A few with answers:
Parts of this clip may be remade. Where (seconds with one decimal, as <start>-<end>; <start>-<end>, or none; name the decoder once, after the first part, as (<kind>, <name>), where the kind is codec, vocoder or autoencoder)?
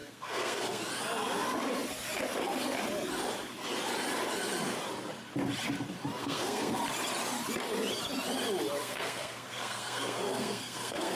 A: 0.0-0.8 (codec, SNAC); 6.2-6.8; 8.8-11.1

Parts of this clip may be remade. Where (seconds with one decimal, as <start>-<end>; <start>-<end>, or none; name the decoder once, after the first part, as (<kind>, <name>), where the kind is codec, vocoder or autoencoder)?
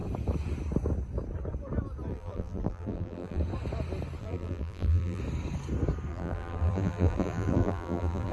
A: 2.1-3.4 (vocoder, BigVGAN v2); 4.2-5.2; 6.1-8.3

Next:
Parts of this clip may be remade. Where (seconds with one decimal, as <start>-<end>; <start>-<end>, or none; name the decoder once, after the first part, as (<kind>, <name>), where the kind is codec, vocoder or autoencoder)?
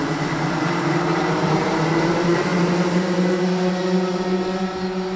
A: none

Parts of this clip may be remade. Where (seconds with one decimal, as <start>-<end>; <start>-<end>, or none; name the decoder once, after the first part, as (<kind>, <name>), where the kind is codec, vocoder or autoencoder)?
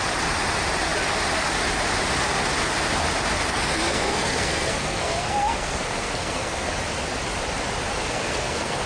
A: 3.5-6.7 (codec, SNAC); 8.0-8.9